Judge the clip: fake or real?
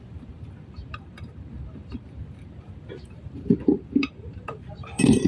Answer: fake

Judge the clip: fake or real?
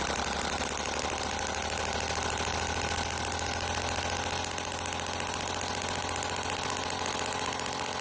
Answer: real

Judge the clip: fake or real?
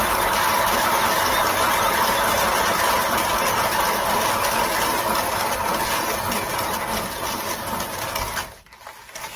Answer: real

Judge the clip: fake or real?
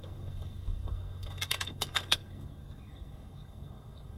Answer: fake